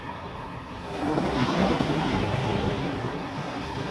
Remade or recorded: remade